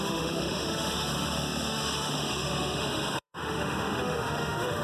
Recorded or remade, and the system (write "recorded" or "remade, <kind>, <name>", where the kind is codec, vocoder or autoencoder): remade, autoencoder, DAC-VAE